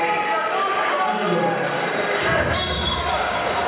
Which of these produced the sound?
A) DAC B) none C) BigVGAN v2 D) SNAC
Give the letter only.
A